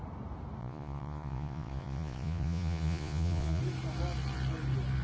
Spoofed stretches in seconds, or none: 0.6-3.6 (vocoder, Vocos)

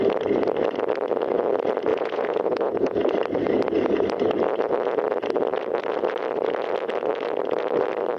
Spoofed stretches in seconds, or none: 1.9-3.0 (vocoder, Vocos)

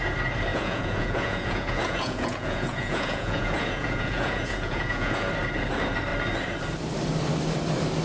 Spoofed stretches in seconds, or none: 0.5-5.3 (vocoder, Vocos)

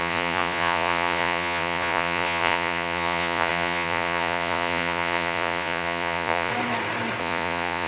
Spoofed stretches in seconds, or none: 0.0-6.5 (vocoder, Vocos); 7.2-7.9

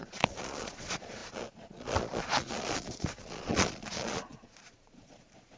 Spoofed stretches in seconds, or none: 0.0-5.6 (vocoder, Vocos)

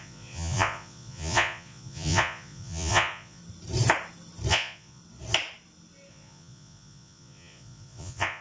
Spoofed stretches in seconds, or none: 0.0-3.4 (vocoder, Vocos); 4.5-5.0; 6.1-8.4